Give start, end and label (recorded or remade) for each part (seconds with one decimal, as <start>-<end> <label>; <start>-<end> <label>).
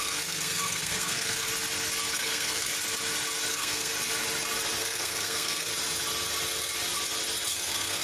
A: 0.0-1.5 remade; 1.5-2.1 recorded; 2.1-2.7 remade; 2.7-3.5 recorded; 3.5-3.9 remade; 3.9-4.8 recorded; 4.8-5.7 remade; 5.7-7.5 recorded; 7.5-8.0 remade